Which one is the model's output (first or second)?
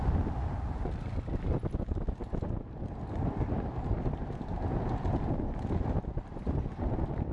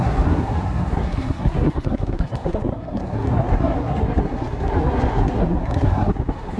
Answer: second